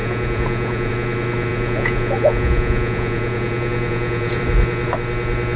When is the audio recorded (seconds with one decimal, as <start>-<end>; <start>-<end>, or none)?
0.9-1.5; 4.4-5.6